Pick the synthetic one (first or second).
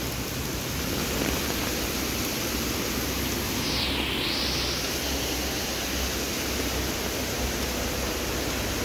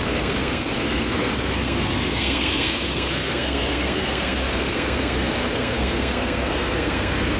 second